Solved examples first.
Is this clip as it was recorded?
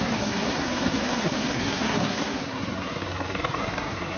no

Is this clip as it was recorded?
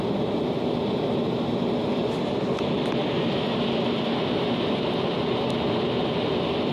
yes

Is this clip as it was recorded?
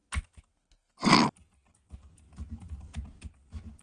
yes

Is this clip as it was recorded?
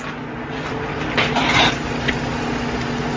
yes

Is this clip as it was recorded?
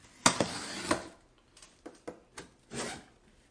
yes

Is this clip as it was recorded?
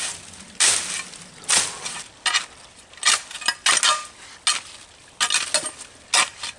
yes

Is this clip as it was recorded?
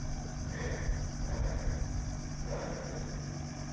yes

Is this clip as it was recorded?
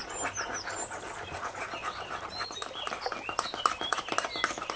yes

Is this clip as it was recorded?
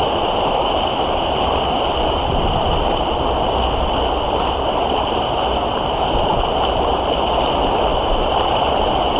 yes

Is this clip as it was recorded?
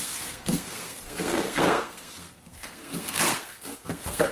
no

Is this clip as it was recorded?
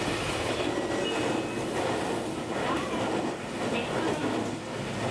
yes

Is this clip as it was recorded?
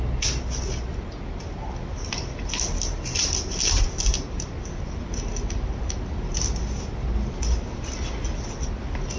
yes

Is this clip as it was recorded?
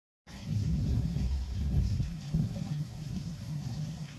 no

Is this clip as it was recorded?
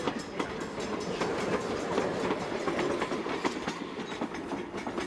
yes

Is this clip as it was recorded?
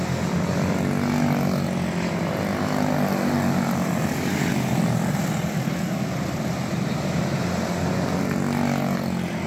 yes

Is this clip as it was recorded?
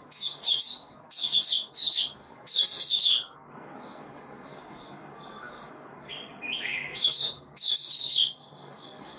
no